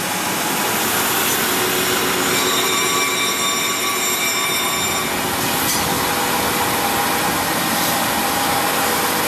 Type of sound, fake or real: real